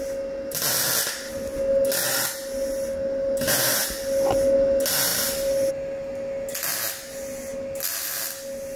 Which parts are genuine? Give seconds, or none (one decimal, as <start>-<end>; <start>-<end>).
0.0-5.1; 5.7-8.8